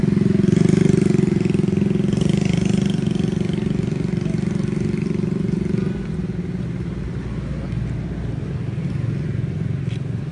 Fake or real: real